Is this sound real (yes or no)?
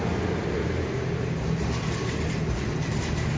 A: yes